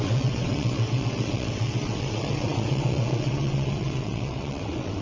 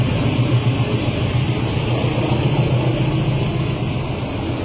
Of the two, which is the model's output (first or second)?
first